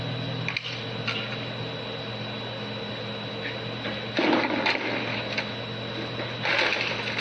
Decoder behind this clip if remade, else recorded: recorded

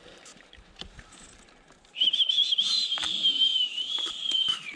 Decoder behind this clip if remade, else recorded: remade, vocoder, BigVGAN v2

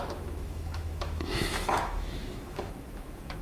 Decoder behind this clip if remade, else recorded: remade, autoencoder, DAC-VAE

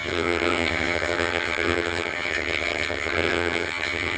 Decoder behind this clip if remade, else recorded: remade, vocoder, HiFi-GAN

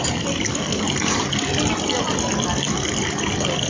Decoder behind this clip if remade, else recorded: recorded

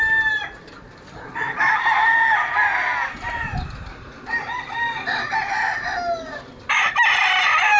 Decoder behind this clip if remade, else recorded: recorded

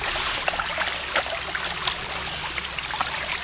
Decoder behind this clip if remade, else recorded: recorded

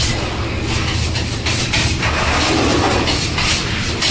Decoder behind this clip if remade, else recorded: recorded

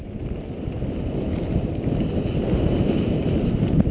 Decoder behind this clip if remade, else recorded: recorded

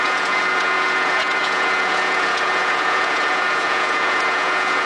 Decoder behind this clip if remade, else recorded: remade, vocoder, Vocos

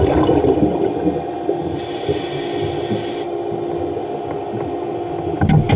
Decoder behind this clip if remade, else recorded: recorded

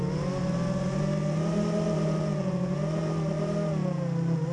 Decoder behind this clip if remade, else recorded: recorded